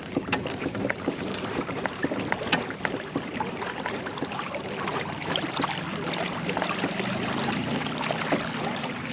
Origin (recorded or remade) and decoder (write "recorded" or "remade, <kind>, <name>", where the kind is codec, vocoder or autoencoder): recorded